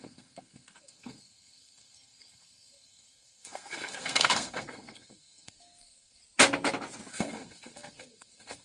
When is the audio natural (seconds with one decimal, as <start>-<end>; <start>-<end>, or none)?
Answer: 6.2-7.1

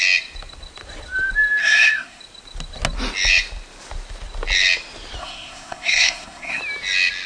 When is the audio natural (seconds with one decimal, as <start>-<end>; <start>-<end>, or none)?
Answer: 0.0-1.6; 2.2-5.2; 6.6-7.3

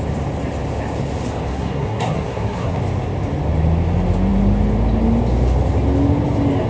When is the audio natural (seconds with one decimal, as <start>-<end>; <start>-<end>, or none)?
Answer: 0.0-1.5; 2.8-6.7